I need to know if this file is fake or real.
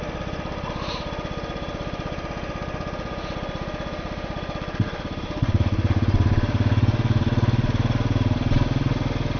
real